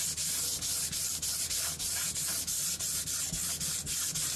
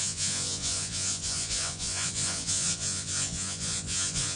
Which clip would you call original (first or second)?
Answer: first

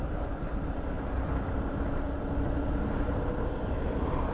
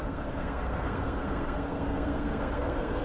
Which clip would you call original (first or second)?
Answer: first